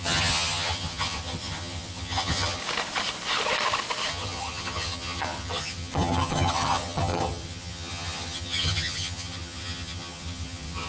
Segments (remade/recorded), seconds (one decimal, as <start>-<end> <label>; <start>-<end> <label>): 0.0-2.6 remade; 2.6-4.1 recorded; 4.1-10.9 remade